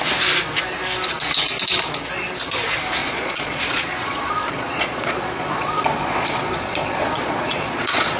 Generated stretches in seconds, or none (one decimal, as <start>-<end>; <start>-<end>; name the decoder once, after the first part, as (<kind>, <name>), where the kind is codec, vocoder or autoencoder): 3.0-8.2 (vocoder, Vocos)